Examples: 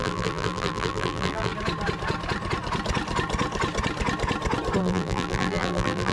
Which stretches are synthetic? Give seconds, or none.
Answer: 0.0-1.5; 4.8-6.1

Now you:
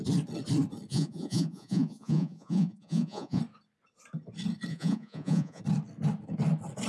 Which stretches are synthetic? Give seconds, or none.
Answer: 0.9-3.4; 4.7-5.6

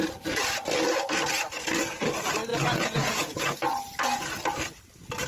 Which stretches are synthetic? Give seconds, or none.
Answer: 2.5-3.8

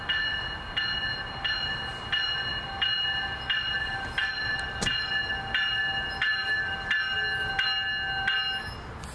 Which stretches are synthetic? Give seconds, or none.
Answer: none

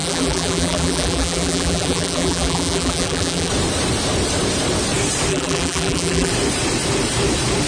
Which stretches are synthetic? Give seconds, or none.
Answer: 0.0-3.5; 5.3-6.3